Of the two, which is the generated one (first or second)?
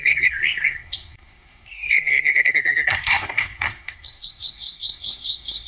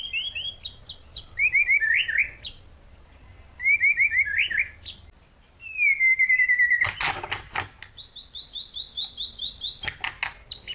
first